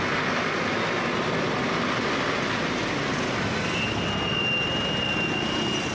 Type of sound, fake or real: real